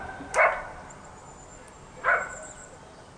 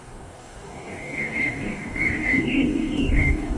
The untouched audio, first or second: first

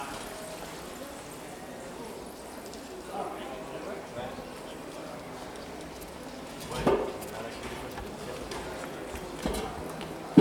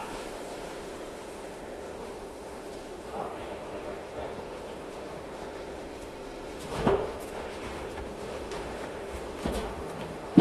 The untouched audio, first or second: first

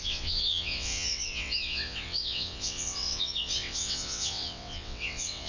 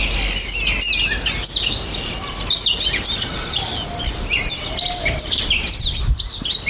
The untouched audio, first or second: second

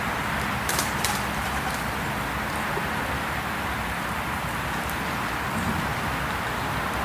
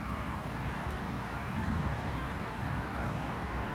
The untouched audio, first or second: first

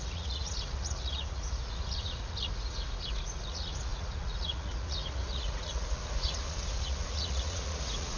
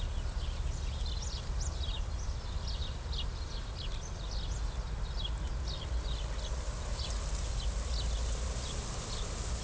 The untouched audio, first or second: second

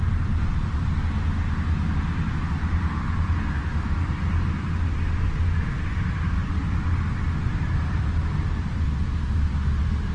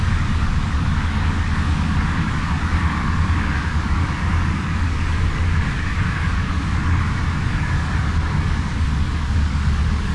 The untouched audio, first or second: first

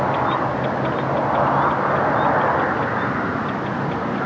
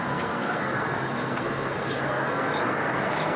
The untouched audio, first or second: first